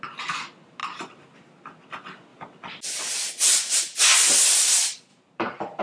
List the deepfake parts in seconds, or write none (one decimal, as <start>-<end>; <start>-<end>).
0.8-1.4; 5.1-5.8